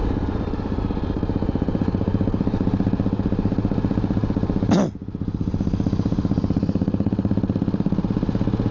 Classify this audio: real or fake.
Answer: real